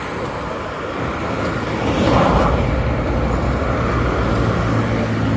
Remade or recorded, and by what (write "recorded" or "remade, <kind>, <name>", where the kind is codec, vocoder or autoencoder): recorded